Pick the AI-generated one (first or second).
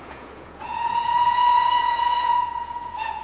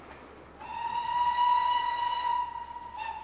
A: first